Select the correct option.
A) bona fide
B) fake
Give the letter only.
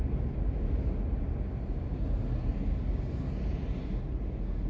A